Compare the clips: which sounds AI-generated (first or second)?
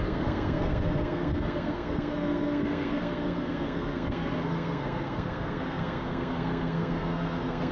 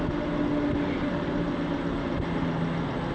first